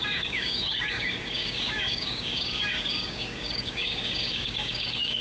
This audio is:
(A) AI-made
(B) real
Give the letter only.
A